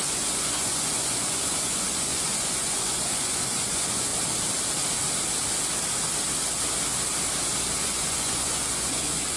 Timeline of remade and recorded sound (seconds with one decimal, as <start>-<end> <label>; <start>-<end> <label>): 0.0-4.1 remade; 4.1-7.8 recorded; 7.8-9.4 remade